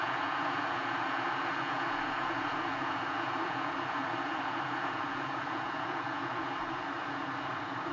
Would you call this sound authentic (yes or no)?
no